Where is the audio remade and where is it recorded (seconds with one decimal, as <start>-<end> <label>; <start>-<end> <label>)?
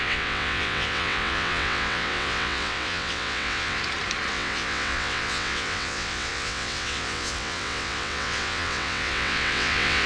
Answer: 0.0-3.8 remade; 3.8-4.3 recorded; 4.3-10.1 remade